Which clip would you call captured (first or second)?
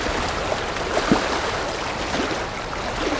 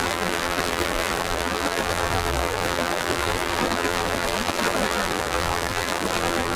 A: first